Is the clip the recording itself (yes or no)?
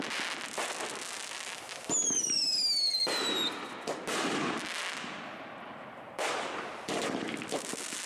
yes